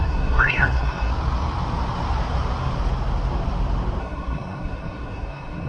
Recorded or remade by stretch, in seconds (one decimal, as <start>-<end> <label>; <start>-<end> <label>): 0.0-1.1 remade; 1.1-4.0 recorded; 4.0-5.7 remade